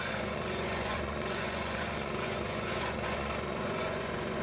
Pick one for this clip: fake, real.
fake